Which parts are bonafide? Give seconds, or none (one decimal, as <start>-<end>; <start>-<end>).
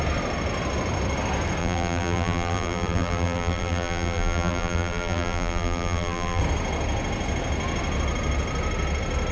0.0-1.6; 6.4-9.3